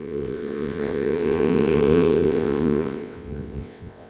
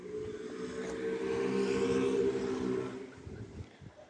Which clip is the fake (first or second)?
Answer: first